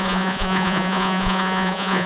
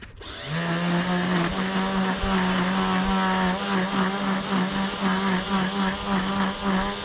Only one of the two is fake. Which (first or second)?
first